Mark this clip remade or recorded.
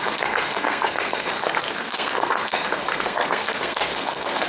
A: remade